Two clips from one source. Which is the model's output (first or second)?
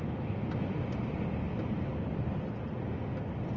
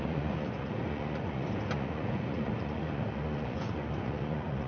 second